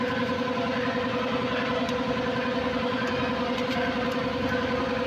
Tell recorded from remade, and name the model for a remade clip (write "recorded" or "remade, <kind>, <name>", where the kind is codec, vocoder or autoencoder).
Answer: recorded